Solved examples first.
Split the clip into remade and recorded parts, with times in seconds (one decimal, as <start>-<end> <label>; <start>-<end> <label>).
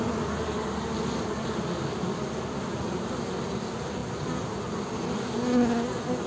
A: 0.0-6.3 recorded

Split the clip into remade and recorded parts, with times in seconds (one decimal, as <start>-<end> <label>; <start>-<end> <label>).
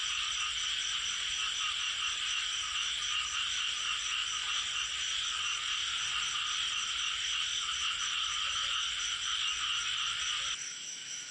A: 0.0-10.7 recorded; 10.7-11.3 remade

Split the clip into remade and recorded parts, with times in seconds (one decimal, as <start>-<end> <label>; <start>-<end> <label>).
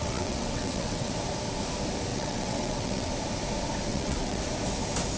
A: 0.0-1.1 remade; 1.1-2.1 recorded; 2.1-3.1 remade; 3.1-3.9 recorded; 3.9-4.4 remade; 4.4-5.2 recorded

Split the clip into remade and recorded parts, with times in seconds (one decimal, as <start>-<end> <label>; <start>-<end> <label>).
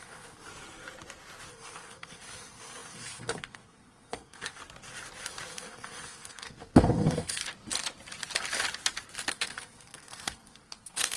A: 0.0-0.5 remade; 0.5-1.5 recorded; 1.5-4.6 remade; 4.6-5.5 recorded; 5.5-7.4 remade; 7.4-9.3 recorded; 9.3-11.2 remade